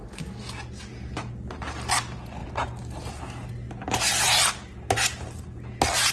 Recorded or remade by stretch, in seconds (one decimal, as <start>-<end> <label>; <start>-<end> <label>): 0.0-6.1 recorded